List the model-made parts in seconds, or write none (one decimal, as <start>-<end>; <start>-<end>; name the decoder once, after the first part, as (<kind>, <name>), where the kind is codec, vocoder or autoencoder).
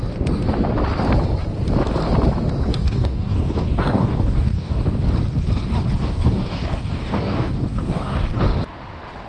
2.7-4.8 (codec, DAC); 6.0-8.4